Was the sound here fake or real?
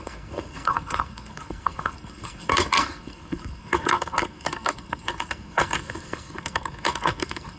fake